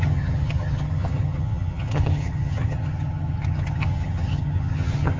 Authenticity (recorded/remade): remade